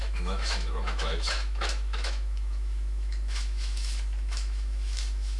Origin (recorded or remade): remade